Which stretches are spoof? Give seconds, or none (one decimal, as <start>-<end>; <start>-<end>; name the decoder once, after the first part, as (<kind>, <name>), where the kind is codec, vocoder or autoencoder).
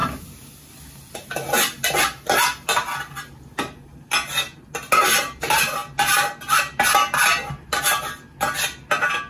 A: none